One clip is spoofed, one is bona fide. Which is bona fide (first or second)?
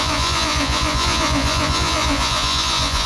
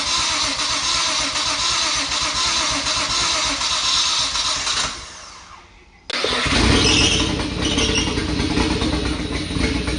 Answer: second